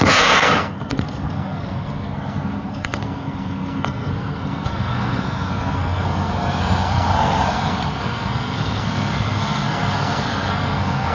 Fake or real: fake